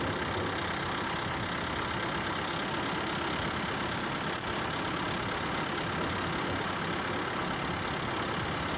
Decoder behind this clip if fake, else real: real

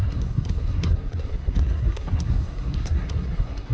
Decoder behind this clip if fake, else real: fake, codec, SNAC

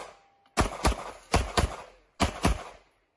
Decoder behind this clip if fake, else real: real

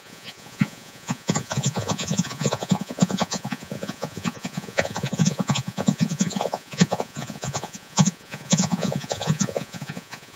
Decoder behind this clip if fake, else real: fake, vocoder, Vocos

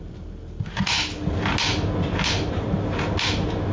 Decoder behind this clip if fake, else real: real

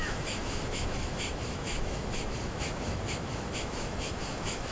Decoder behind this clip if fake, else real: fake, autoencoder, DAC-VAE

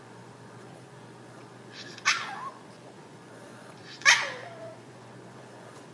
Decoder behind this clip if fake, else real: fake, vocoder, Vocos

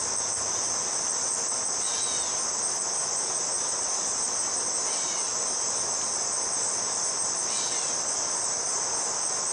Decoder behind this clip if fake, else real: real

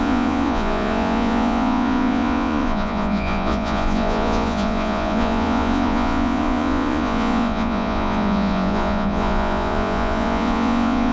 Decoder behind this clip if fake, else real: fake, vocoder, Vocos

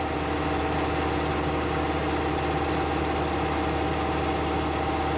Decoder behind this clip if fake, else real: real